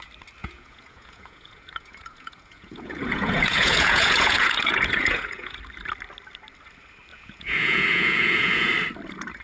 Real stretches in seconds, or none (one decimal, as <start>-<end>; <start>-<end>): 0.0-0.4; 5.6-7.1; 8.7-9.4